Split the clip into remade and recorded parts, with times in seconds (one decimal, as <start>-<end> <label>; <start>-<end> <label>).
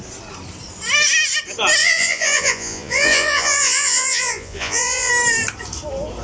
0.0-1.8 recorded; 1.8-5.1 remade; 5.1-6.2 recorded